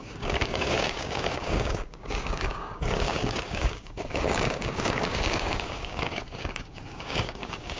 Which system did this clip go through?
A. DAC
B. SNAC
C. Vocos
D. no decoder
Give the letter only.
A